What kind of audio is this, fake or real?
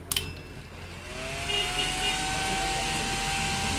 real